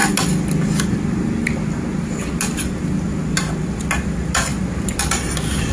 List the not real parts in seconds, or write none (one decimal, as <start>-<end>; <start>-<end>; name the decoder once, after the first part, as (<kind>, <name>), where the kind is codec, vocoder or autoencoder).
none